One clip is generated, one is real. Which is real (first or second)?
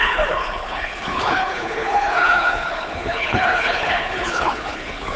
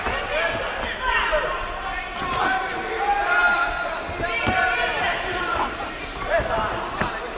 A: second